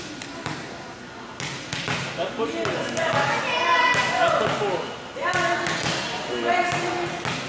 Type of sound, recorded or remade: recorded